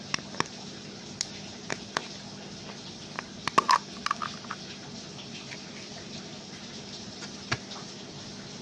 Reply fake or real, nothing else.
real